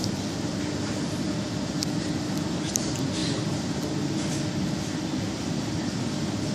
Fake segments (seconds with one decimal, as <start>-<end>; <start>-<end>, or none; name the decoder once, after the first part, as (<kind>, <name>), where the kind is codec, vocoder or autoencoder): none